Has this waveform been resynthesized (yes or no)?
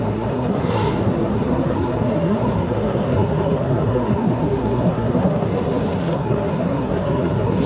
yes